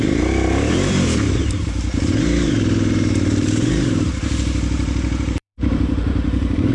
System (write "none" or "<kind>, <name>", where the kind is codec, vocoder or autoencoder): vocoder, BigVGAN v2